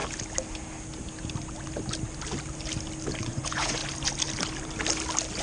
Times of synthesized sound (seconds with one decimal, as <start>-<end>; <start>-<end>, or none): 3.2-3.8